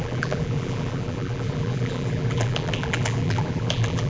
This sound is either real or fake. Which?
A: fake